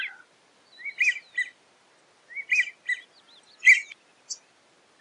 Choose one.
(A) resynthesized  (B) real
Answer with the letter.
B